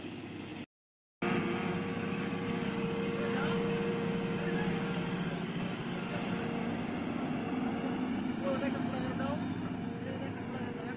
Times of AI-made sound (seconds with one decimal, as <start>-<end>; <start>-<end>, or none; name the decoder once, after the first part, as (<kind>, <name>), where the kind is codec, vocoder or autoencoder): 1.9-3.9 (codec, DAC); 4.4-6.3